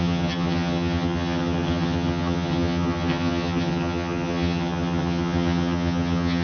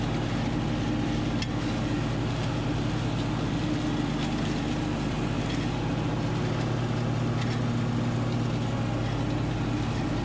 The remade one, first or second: first